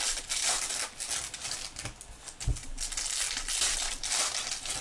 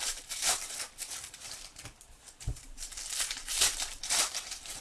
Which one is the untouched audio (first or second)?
first